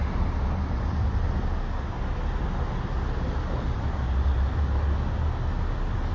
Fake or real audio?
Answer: real